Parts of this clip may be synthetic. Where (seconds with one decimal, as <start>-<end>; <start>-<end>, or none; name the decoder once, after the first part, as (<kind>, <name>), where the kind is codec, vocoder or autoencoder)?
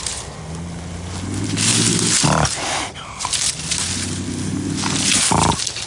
none